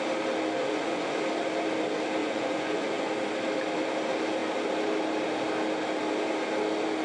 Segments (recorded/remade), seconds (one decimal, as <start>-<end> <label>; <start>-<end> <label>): 0.0-0.6 recorded; 0.6-1.2 remade; 1.2-2.2 recorded; 2.2-3.1 remade; 3.1-7.0 recorded